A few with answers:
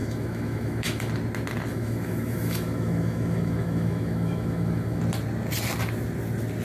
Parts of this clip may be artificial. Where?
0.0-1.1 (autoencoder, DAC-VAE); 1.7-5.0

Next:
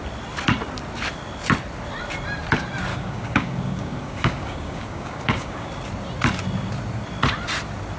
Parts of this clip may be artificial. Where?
2.9-5.7 (codec, DAC)

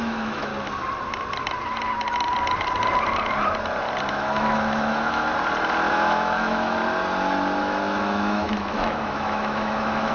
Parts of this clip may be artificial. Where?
0.0-0.5 (autoencoder, DAC-VAE); 4.1-5.3; 5.9-6.8; 7.6-10.1

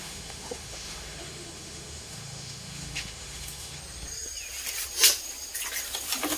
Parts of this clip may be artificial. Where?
0.0-3.8 (autoencoder, DAC-VAE)